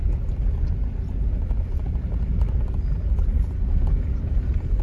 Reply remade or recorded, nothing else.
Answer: recorded